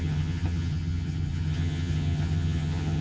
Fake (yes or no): yes